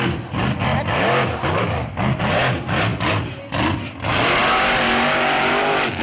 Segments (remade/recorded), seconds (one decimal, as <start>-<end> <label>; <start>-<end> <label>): 0.0-6.0 recorded